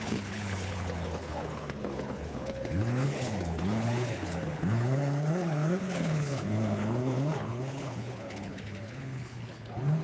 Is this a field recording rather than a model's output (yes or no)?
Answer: no